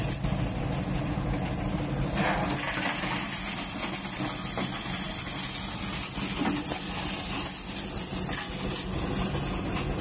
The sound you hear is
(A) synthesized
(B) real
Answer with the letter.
B